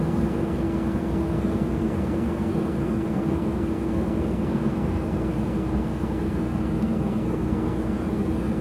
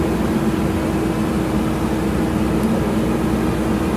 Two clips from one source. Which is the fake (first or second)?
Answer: first